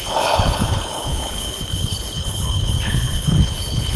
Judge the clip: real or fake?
fake